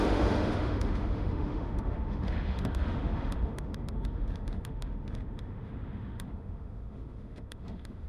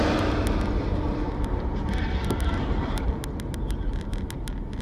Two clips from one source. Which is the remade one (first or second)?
first